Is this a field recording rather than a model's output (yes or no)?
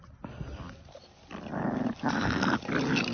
yes